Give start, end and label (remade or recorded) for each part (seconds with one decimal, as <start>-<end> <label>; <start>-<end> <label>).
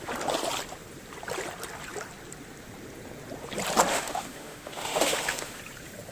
0.0-3.9 recorded; 3.9-5.6 remade; 5.6-6.1 recorded